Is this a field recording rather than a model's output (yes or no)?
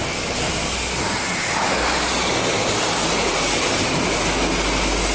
yes